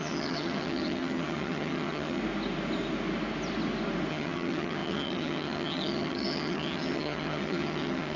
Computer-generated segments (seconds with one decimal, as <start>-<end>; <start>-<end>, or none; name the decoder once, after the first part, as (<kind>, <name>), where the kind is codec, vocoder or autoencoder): 0.0-2.2 (vocoder, HiFi-GAN); 4.1-8.2